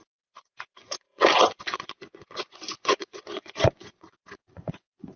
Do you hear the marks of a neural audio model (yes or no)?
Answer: yes